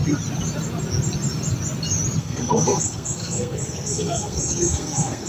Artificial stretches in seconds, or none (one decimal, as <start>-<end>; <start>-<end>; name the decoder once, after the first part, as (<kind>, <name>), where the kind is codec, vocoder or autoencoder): 2.2-5.3 (codec, SNAC)